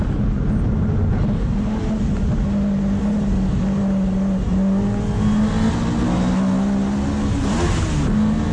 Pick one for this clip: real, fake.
real